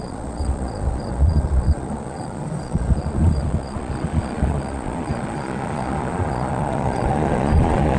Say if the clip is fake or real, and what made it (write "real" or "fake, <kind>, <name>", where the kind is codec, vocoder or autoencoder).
fake, vocoder, Vocos